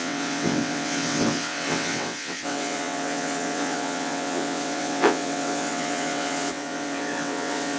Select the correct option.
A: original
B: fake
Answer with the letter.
B